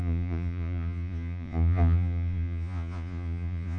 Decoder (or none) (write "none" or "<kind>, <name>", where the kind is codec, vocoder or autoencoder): vocoder, Vocos